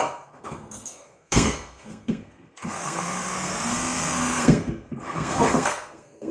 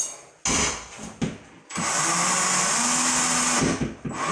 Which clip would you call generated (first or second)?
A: first